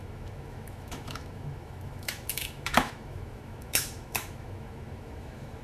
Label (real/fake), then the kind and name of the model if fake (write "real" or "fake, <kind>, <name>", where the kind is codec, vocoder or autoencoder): fake, autoencoder, DAC-VAE